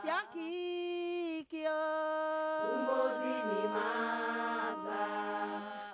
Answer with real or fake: real